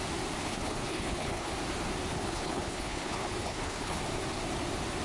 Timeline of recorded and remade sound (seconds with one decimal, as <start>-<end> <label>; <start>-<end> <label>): 0.0-0.4 recorded; 0.4-1.5 remade; 1.5-2.1 recorded; 2.1-4.0 remade; 4.0-5.0 recorded